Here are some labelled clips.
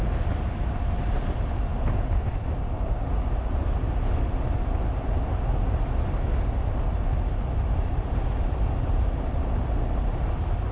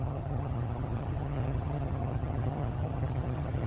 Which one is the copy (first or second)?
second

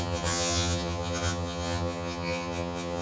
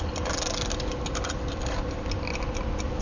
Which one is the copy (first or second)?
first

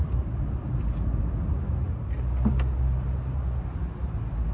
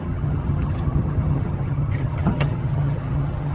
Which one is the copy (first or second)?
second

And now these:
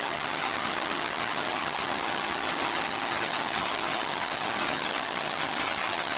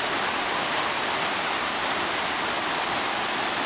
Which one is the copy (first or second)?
first